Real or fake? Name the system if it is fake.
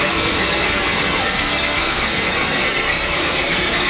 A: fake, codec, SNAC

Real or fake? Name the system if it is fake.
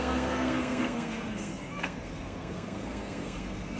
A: fake, codec, SNAC